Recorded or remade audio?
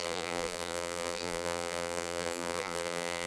remade